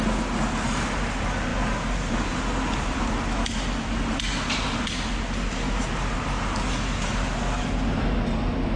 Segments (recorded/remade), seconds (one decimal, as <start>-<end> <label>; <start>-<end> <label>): 0.0-8.8 recorded